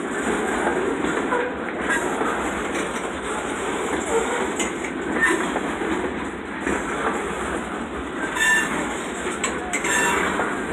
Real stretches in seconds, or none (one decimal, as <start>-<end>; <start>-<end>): 0.0-0.7; 4.3-10.7